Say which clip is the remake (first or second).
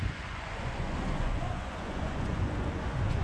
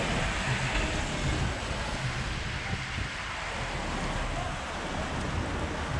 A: first